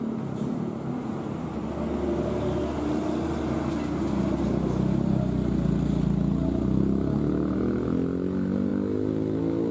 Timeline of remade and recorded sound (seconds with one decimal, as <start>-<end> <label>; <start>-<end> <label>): 0.0-9.7 recorded